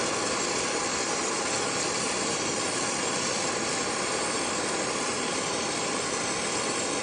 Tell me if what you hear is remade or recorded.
remade